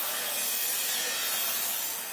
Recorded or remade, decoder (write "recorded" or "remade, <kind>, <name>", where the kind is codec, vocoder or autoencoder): recorded